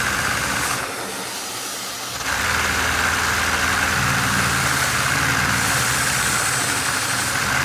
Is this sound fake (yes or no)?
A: no